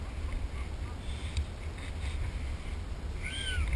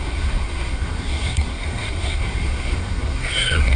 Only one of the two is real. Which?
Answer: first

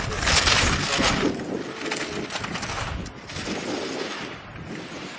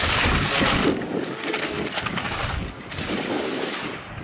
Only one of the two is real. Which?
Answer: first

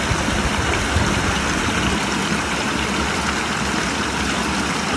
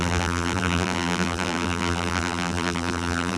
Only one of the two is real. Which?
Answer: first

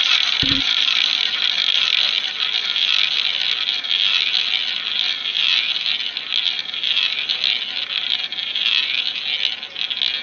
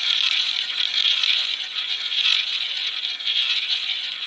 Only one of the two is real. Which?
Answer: first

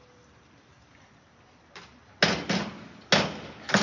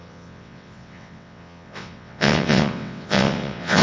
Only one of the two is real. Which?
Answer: first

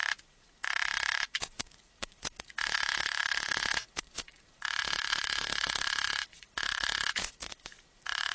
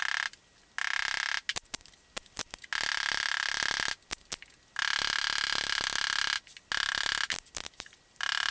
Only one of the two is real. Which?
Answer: second